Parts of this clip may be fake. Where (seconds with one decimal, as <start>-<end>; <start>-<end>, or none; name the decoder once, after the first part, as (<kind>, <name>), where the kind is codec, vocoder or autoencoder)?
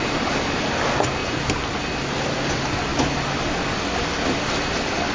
none